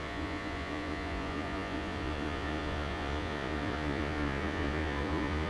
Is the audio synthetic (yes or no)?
yes